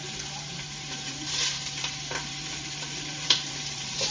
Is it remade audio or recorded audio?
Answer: remade